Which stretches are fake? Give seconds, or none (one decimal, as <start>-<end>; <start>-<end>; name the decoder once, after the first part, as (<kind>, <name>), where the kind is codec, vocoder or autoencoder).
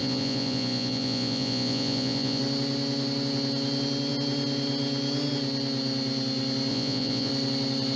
0.0-2.4 (vocoder, Vocos); 6.7-7.3